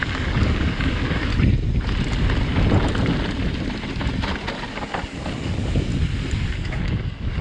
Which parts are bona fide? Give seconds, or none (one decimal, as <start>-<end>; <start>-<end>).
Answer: 1.3-4.7; 5.9-6.5